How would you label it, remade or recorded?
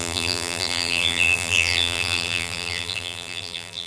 remade